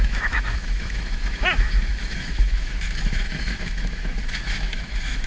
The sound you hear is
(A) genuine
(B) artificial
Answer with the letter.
B